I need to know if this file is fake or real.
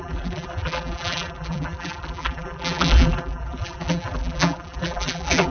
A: fake